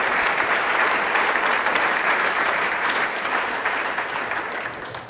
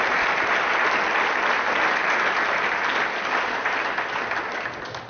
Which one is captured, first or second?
second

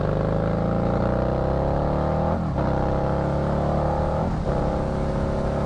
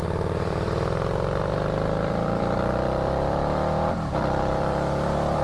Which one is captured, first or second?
first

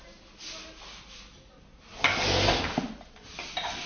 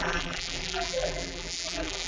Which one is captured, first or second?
first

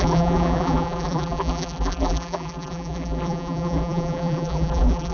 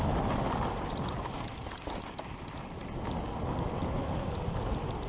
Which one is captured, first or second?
second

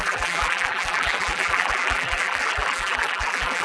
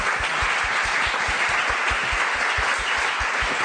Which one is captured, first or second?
second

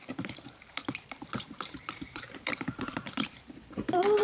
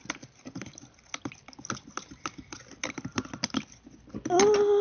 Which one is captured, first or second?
second